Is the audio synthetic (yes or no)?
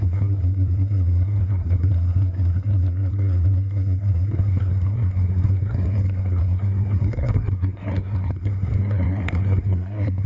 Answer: yes